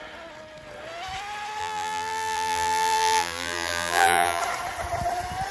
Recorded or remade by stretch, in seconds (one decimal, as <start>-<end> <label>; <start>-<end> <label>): 0.0-1.6 recorded; 1.6-4.4 remade; 4.4-5.5 recorded